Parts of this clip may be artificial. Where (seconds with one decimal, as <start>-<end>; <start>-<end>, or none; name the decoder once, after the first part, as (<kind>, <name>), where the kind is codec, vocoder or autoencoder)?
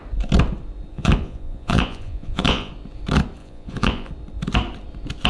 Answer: 0.9-2.7 (vocoder, Vocos); 3.4-4.1